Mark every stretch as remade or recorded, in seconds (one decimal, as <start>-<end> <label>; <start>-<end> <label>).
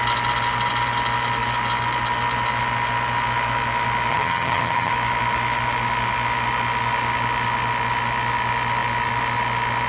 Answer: 0.0-4.1 recorded; 4.1-4.9 remade; 4.9-9.9 recorded